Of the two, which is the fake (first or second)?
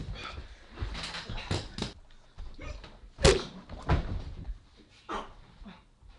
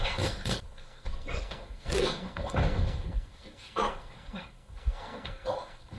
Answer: second